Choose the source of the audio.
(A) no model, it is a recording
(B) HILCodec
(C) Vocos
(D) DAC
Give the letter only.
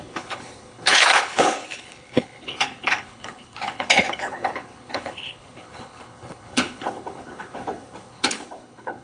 B